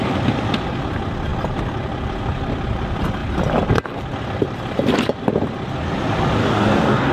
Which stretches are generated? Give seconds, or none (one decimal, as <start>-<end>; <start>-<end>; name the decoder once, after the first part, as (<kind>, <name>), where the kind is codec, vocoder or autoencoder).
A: 6.4-7.1 (codec, DAC)